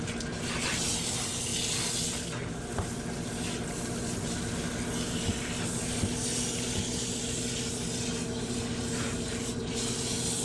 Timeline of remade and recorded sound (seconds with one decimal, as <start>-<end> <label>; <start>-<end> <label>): 0.0-10.4 recorded